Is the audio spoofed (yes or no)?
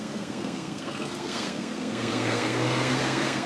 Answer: yes